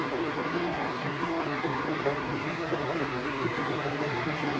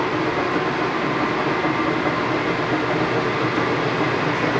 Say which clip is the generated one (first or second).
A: first